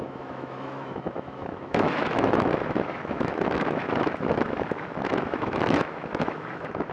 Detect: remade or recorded remade